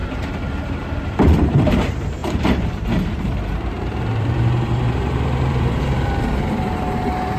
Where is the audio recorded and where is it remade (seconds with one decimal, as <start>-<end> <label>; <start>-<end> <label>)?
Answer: 0.0-7.4 remade